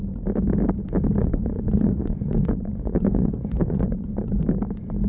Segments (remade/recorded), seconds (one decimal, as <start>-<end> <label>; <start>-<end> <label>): 0.0-1.2 recorded; 1.2-4.3 remade; 4.3-5.1 recorded